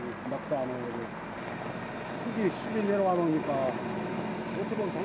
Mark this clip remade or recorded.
recorded